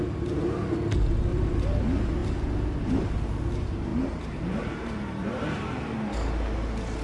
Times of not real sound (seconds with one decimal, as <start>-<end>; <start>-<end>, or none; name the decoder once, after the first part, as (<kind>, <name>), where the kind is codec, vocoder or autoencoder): 1.3-1.8 (vocoder, BigVGAN v2); 3.9-5.8